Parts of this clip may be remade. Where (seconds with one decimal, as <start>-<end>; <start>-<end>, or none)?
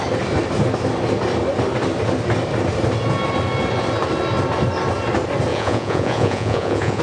5.5-7.0